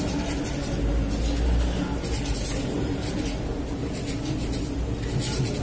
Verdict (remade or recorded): recorded